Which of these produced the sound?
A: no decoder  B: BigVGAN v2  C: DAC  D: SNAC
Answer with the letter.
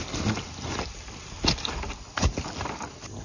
A